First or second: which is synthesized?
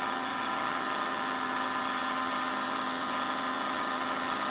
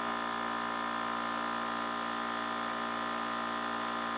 first